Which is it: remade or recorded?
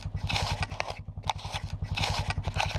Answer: recorded